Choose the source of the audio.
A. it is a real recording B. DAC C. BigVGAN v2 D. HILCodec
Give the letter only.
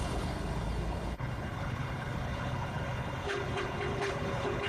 D